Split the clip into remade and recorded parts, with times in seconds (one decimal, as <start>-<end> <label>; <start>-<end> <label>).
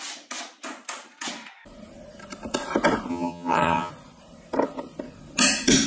0.0-3.1 recorded; 3.1-3.9 remade; 3.9-5.9 recorded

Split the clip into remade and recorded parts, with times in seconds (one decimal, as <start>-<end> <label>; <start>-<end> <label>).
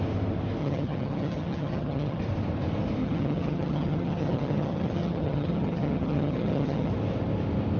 0.0-0.6 recorded; 0.6-2.2 remade; 2.2-3.0 recorded; 3.0-6.9 remade; 6.9-7.8 recorded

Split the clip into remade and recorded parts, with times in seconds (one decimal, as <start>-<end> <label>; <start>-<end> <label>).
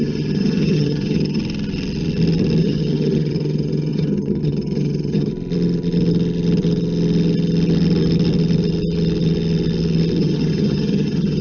0.0-1.4 remade; 1.4-2.6 recorded; 2.6-5.3 remade; 5.3-10.2 recorded; 10.2-11.4 remade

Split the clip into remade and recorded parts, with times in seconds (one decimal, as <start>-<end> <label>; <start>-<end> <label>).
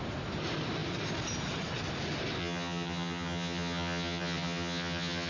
0.0-2.4 recorded; 2.4-5.3 remade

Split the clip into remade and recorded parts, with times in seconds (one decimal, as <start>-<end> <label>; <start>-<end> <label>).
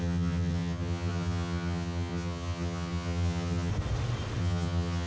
0.0-3.7 remade; 3.7-4.4 recorded; 4.4-5.1 remade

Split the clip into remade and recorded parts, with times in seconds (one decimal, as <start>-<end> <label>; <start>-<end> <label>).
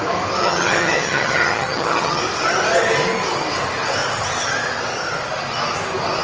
0.0-0.4 recorded; 0.4-2.2 remade; 2.2-6.2 recorded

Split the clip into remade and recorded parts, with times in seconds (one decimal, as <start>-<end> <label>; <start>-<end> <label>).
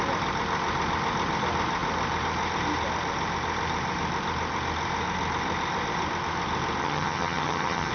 0.0-6.8 recorded; 6.8-7.9 remade